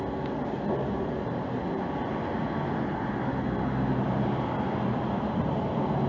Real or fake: real